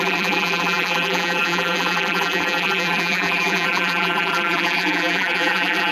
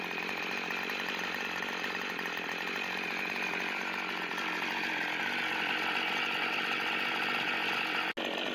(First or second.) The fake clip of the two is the first